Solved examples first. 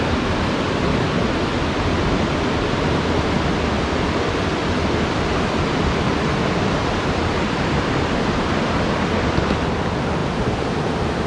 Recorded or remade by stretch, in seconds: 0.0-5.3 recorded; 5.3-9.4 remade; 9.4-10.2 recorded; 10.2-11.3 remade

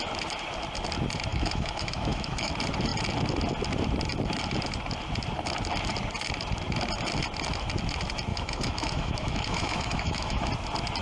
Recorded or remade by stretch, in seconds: 0.0-1.3 recorded; 1.3-2.5 remade; 2.5-8.3 recorded; 8.3-10.5 remade; 10.5-11.0 recorded

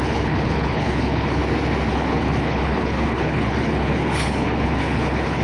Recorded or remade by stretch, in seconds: 0.0-1.4 remade; 1.4-1.9 recorded; 1.9-5.4 remade

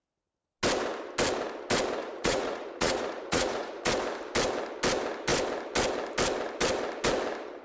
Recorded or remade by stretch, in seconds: 0.0-2.0 recorded; 2.0-3.9 remade; 3.9-7.6 recorded

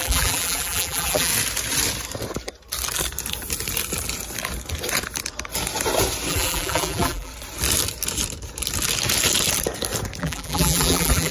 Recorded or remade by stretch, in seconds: 0.0-1.3 remade; 1.3-6.3 recorded; 6.3-7.3 remade; 7.3-10.2 recorded; 10.2-11.3 remade